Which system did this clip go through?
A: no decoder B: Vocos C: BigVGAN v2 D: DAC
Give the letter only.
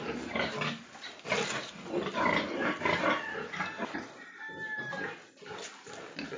A